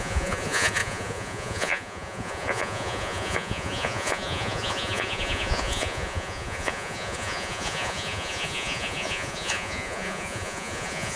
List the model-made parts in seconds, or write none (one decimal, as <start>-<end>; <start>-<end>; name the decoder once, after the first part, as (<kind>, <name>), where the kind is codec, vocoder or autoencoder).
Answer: 0.0-11.2 (vocoder, Vocos)